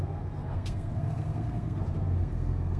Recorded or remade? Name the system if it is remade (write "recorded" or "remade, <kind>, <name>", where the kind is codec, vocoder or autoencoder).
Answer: remade, codec, SNAC